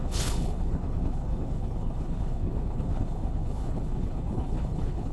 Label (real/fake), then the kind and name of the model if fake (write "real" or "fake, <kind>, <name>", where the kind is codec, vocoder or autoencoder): fake, codec, HILCodec